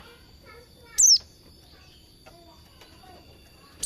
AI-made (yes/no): no